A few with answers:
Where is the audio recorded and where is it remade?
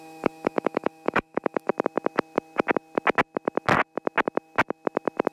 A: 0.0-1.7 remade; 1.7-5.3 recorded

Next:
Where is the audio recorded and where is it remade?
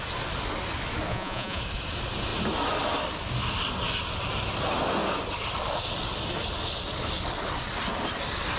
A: 0.0-1.1 recorded; 1.1-1.6 remade; 1.6-8.6 recorded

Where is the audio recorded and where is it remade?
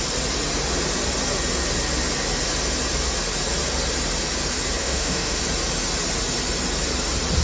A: 0.0-4.8 recorded; 4.8-5.4 remade; 5.4-7.4 recorded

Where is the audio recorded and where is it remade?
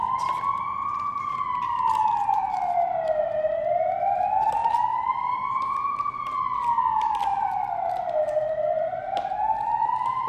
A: 0.0-1.2 remade; 1.2-4.6 recorded; 4.6-5.6 remade; 5.6-7.3 recorded; 7.3-10.3 remade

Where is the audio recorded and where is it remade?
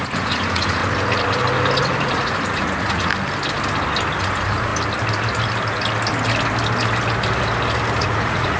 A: 0.0-0.8 remade; 0.8-1.8 recorded; 1.8-3.1 remade; 3.1-4.2 recorded; 4.2-4.7 remade; 4.7-8.0 recorded; 8.0-8.6 remade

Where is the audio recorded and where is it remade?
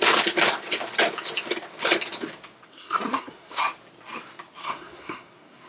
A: 0.0-2.7 recorded; 2.7-3.6 remade; 3.6-4.6 recorded; 4.6-5.7 remade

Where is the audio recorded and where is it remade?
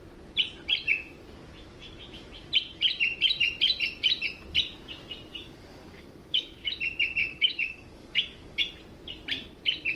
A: 0.0-5.3 recorded; 5.3-6.7 remade; 6.7-7.2 recorded; 7.2-8.6 remade; 8.6-10.0 recorded